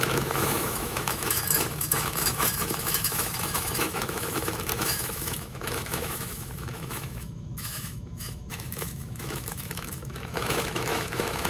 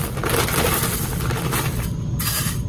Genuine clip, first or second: second